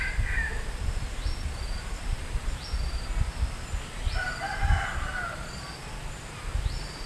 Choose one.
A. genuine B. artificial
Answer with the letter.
A